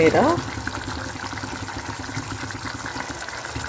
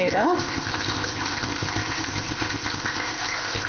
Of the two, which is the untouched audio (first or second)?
first